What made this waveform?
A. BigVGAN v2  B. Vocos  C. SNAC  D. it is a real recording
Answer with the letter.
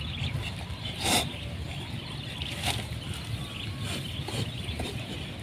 D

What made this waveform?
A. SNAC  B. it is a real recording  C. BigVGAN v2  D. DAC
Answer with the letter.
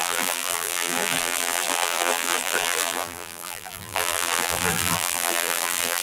C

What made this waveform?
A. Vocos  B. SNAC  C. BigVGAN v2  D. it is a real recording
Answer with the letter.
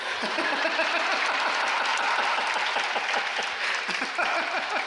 D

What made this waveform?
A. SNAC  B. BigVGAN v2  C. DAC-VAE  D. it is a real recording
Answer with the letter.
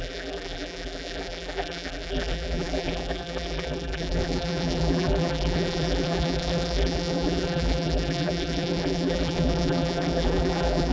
B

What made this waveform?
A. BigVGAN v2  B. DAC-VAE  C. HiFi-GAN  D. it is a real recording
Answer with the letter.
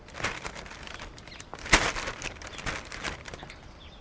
D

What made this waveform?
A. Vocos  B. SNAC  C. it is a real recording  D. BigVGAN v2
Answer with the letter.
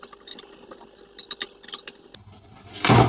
D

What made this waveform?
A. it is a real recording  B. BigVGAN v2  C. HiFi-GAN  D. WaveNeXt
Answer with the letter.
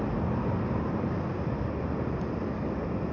B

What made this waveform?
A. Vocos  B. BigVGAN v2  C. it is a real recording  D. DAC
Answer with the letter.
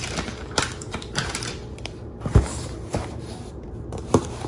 B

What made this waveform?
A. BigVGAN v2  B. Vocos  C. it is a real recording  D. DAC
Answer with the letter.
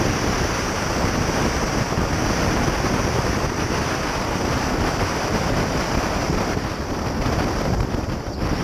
A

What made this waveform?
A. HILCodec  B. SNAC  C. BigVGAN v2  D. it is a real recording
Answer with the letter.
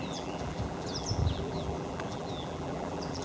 C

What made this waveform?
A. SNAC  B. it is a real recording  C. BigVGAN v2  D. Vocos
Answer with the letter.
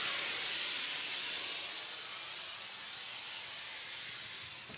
B